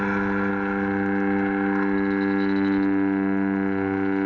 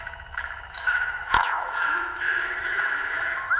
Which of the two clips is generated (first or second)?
second